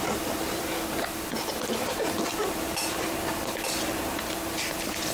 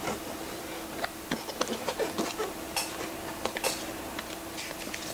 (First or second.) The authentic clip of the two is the second